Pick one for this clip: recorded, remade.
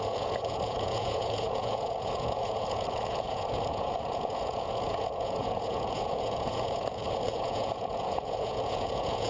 remade